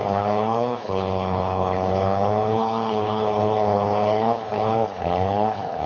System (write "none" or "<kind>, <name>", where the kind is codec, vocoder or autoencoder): codec, HILCodec